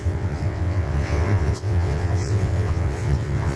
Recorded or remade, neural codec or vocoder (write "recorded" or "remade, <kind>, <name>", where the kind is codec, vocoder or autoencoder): remade, vocoder, WaveNeXt